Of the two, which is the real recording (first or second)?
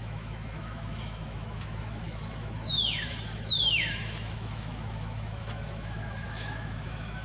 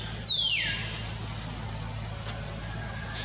second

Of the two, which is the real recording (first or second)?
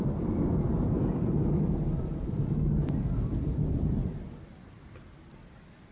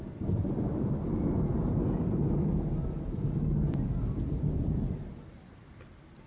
second